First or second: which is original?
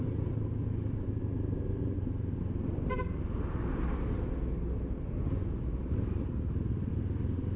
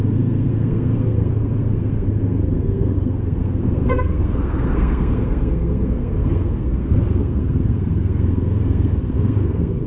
first